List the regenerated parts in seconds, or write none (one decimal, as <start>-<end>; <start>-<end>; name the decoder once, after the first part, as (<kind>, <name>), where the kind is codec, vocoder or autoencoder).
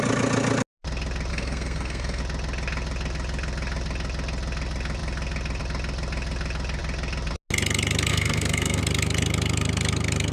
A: 1.3-2.2 (codec, SNAC); 8.1-8.8